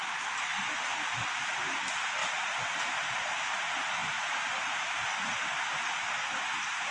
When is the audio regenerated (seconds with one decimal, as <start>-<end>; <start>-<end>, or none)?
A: 0.5-1.1; 2.2-3.4